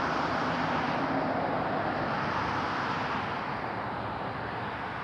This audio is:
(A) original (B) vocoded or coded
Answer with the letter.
A